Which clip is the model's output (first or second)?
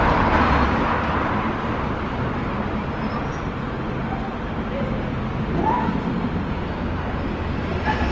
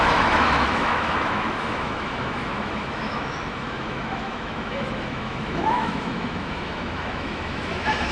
second